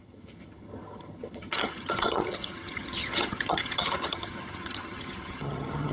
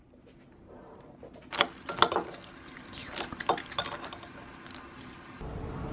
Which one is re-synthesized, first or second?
first